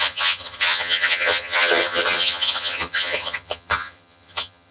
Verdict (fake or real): fake